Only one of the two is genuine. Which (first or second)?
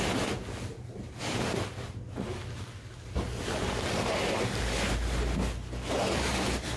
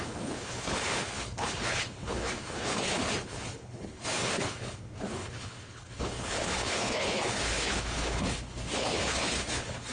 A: first